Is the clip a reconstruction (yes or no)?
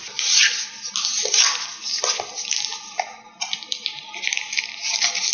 no